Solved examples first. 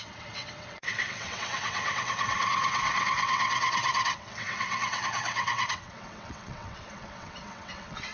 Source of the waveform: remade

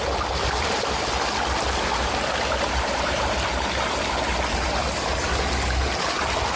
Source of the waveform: recorded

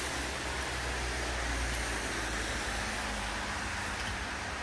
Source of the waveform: recorded